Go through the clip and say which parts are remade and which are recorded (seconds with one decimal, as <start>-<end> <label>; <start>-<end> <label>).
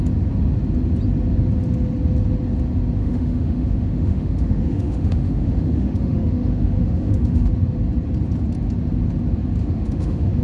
0.0-3.0 recorded; 3.0-7.5 remade; 7.5-9.6 recorded; 9.6-10.4 remade